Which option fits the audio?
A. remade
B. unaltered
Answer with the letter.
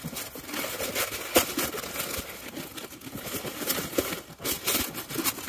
B